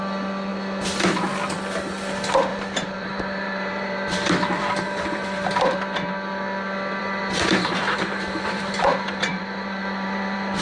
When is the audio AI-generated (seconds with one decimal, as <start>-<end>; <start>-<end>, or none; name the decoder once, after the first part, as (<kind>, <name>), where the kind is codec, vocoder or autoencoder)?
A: 2.5-5.8 (vocoder, BigVGAN v2); 7.0-10.6